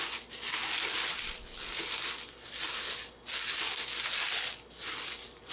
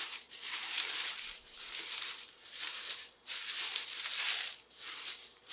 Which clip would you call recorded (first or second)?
first